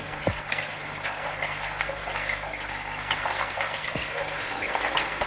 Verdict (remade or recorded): remade